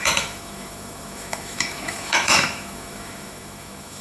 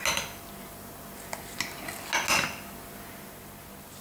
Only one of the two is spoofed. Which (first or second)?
first